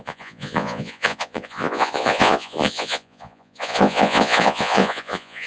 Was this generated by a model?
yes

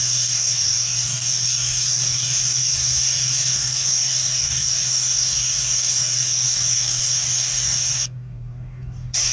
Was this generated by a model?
yes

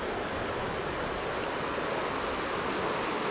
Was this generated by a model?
no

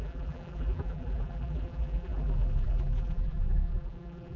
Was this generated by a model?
yes